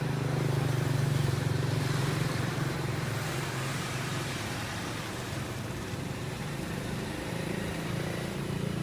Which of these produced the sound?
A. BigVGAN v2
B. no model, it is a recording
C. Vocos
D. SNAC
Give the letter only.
A